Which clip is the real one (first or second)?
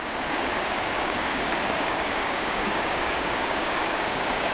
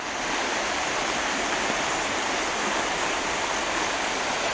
second